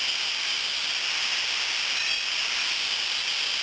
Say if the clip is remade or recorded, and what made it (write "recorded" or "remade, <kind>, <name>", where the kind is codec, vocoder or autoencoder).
recorded